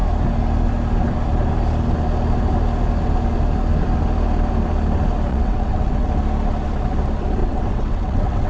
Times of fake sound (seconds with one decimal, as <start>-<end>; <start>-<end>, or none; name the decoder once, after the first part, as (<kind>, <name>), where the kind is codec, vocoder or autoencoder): 5.3-6.1 (vocoder, WaveNeXt); 7.4-8.5